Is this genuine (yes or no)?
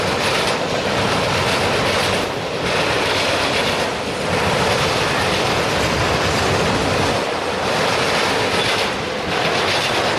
yes